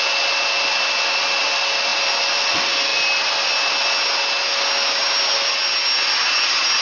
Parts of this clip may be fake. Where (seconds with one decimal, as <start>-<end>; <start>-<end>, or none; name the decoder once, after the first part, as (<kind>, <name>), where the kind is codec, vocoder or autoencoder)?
1.9-2.5 (vocoder, BigVGAN v2)